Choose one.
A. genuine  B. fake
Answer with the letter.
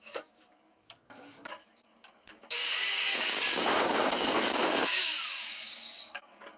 B